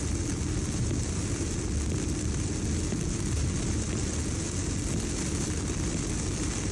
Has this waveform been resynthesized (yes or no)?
no